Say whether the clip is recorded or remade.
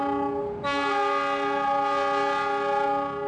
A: recorded